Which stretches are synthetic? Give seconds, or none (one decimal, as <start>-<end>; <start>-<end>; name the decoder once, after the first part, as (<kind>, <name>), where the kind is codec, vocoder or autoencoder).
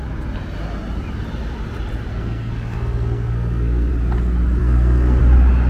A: 2.1-3.9 (codec, SNAC); 4.6-5.2